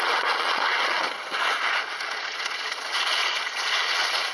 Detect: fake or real fake